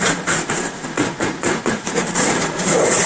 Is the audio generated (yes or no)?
yes